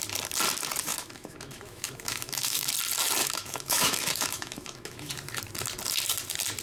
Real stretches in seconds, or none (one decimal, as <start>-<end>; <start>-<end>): 0.0-0.9; 2.7-3.2; 5.1-6.6